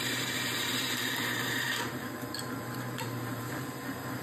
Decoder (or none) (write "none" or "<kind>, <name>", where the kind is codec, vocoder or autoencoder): vocoder, BigVGAN v2